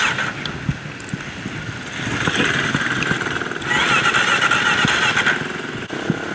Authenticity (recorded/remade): recorded